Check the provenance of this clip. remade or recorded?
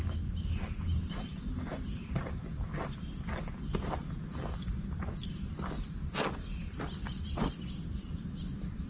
recorded